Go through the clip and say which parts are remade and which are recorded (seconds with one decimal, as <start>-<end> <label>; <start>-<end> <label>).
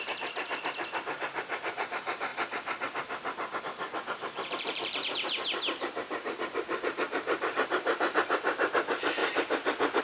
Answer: 0.0-2.3 remade; 2.3-3.6 recorded; 3.6-9.2 remade; 9.2-10.0 recorded